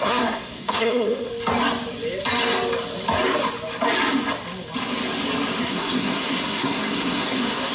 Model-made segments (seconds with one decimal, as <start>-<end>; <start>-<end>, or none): 0.0-1.3; 5.6-7.7